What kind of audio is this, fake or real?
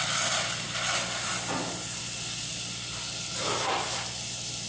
real